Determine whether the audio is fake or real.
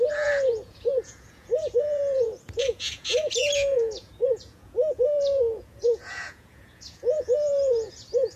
fake